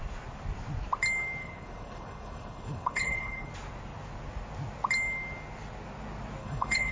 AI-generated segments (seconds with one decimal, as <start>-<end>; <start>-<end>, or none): 1.4-3.5; 6.4-6.9